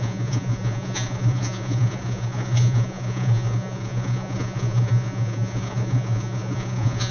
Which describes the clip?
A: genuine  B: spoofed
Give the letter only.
B